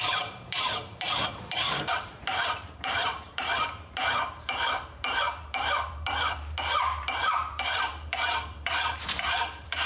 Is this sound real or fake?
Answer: fake